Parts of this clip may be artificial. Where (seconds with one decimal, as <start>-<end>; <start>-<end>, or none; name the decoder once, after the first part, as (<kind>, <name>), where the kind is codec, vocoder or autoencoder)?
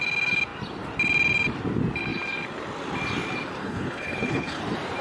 3.6-4.6 (codec, HILCodec)